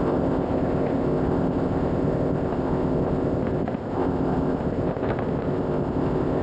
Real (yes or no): no